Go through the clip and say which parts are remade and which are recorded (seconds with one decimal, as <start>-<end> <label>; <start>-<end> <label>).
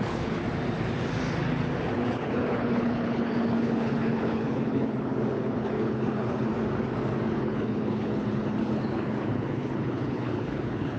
0.0-0.4 remade; 0.4-1.9 recorded; 1.9-6.5 remade; 6.5-7.3 recorded; 7.3-11.0 remade